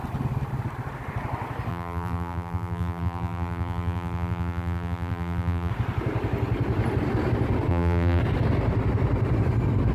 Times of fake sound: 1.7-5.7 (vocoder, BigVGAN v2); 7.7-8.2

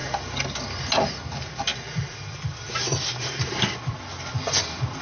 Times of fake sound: 1.7-5.0 (vocoder, BigVGAN v2)

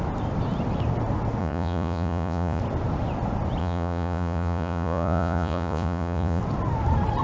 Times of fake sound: 1.4-2.6 (vocoder, Vocos); 3.6-6.4